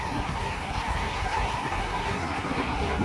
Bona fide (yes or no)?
no